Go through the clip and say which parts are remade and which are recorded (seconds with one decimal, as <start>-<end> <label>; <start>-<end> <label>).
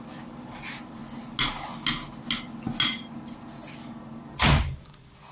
0.0-5.3 recorded